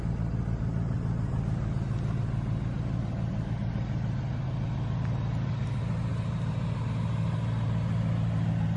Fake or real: real